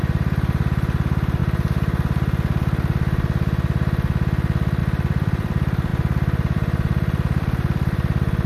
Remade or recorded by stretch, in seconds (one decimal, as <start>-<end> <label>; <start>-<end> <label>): 0.0-1.4 remade; 1.4-4.8 recorded; 4.8-8.5 remade